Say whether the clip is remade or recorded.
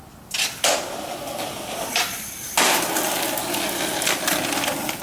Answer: recorded